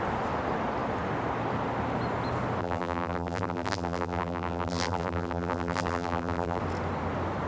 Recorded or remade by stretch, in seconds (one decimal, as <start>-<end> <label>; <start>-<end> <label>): 0.0-2.6 recorded; 2.6-6.6 remade; 6.6-7.5 recorded